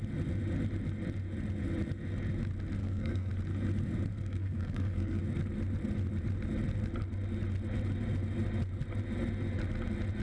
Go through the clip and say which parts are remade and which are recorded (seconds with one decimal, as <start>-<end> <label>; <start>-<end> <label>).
0.0-2.8 recorded; 2.8-3.3 remade; 3.3-4.1 recorded; 4.1-5.2 remade; 5.2-10.2 recorded